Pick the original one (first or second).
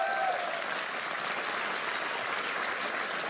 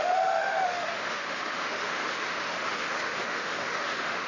first